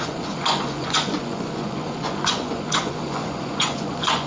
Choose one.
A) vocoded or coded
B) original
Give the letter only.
A